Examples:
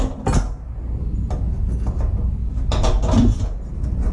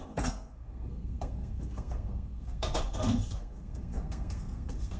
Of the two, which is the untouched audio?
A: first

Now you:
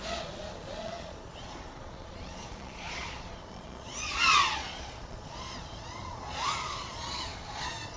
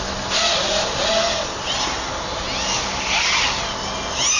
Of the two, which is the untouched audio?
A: second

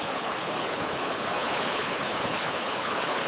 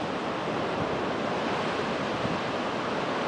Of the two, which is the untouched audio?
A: second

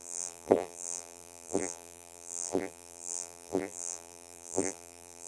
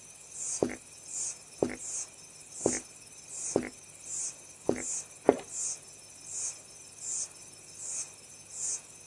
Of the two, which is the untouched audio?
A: second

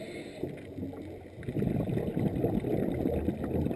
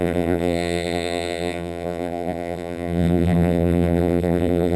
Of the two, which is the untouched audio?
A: first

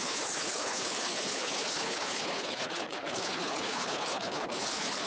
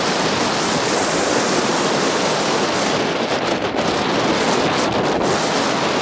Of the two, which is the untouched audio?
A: second